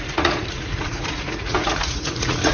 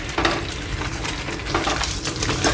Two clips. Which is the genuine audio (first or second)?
second